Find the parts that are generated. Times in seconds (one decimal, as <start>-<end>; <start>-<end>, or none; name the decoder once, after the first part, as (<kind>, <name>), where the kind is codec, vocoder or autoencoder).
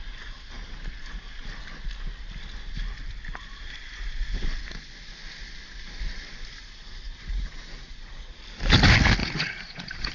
6.6-8.4 (vocoder, Vocos); 9.2-10.1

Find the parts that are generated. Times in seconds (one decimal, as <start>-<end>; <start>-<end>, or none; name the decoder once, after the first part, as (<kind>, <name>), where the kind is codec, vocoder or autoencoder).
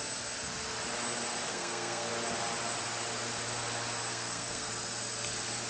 1.5-2.1 (codec, SNAC); 4.1-4.7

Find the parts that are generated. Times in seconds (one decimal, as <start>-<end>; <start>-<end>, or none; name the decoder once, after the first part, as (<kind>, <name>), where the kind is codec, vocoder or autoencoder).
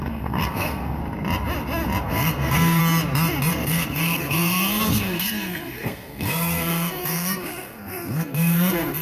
0.0-1.0 (codec, SNAC); 2.0-2.8; 3.5-9.0